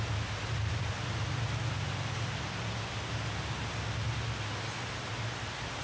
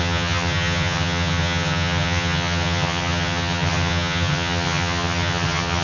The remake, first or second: second